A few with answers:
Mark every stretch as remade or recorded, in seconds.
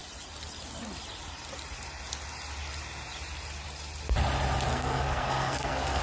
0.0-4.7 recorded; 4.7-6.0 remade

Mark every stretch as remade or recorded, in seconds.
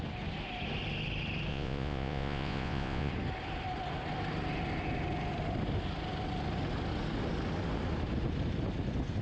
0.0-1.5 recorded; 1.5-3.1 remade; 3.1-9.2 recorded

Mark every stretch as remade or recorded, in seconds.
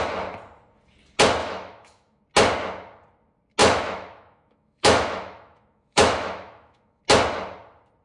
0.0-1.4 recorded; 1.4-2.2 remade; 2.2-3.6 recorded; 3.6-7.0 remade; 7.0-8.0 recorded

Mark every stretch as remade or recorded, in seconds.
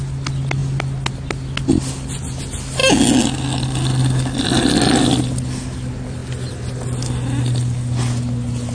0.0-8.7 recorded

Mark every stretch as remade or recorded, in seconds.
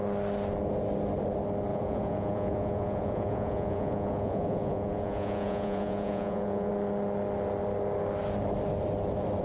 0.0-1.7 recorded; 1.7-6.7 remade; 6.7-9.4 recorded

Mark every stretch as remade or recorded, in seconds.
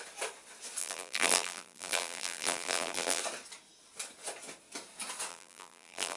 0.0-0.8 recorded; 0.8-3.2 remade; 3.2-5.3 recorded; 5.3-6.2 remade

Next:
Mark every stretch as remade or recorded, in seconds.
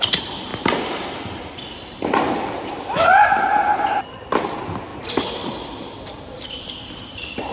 0.0-0.5 remade; 0.5-2.4 recorded; 2.4-7.5 remade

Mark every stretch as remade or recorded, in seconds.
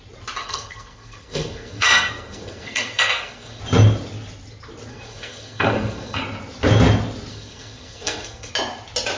0.0-0.4 recorded; 0.4-3.6 remade; 3.6-4.9 recorded; 4.9-6.2 remade; 6.2-7.3 recorded; 7.3-8.5 remade; 8.5-9.2 recorded